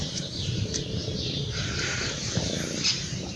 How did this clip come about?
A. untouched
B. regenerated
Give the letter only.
B